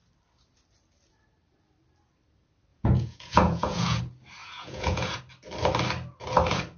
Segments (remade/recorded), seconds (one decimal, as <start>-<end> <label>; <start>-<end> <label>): 0.0-2.7 recorded; 2.7-4.0 remade; 4.0-4.4 recorded; 4.4-5.2 remade; 5.2-6.8 recorded

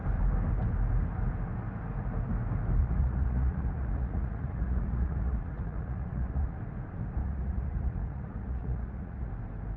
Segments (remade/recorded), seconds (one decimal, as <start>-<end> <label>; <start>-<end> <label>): 0.0-2.8 recorded; 2.8-6.6 remade; 6.6-7.2 recorded; 7.2-9.3 remade; 9.3-9.8 recorded

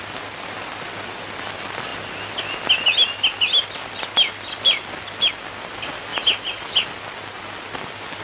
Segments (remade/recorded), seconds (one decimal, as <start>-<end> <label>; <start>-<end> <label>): 0.0-8.2 recorded

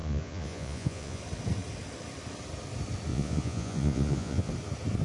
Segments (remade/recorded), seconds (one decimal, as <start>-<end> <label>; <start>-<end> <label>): 0.0-1.2 remade; 1.2-3.1 recorded; 3.1-4.5 remade; 4.5-5.0 recorded

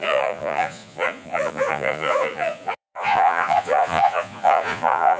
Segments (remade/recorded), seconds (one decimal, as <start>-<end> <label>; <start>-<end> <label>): 0.0-5.2 remade